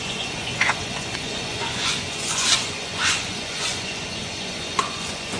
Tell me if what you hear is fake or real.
fake